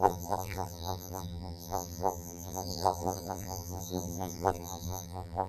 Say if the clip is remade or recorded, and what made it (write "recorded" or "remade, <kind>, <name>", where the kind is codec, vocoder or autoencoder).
remade, vocoder, BigVGAN v2